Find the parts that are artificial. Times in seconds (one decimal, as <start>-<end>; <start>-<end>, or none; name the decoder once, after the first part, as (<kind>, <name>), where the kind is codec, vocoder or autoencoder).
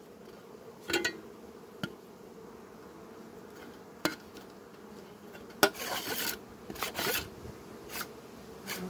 none